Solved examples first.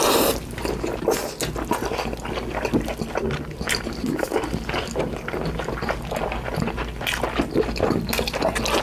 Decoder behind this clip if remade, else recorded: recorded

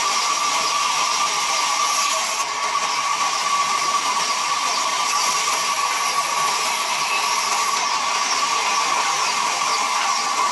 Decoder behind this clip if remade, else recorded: recorded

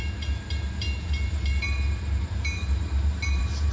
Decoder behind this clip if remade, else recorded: remade, vocoder, BigVGAN v2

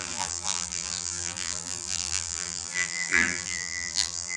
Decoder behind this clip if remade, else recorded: remade, vocoder, BigVGAN v2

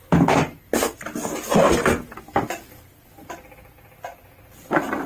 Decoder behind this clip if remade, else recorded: recorded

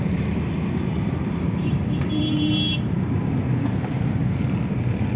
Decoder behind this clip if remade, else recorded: remade, vocoder, BigVGAN v2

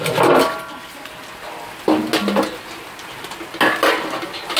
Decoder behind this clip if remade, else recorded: recorded